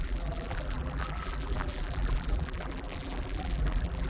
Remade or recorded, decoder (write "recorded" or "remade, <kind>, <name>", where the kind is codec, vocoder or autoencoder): remade, vocoder, BigVGAN v2